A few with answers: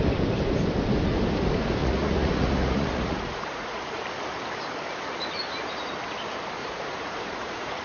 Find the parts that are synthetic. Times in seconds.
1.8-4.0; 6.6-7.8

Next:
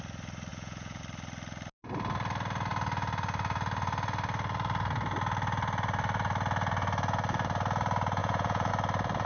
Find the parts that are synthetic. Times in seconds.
0.5-1.0; 8.2-8.7

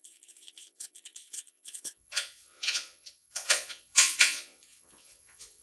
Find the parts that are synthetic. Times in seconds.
0.0-5.6

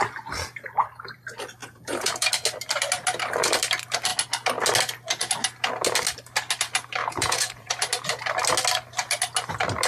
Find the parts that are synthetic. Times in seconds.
1.6-2.3; 7.0-7.7

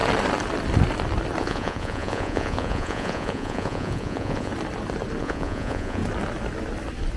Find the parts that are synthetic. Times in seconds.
1.4-4.5; 5.2-6.0

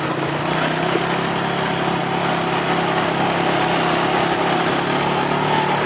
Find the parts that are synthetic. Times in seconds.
none

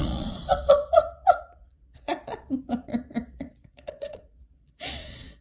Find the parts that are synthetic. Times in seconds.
0.0-5.4

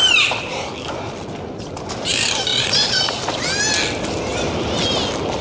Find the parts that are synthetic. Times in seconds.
2.5-3.2